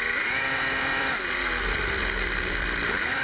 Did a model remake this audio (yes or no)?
yes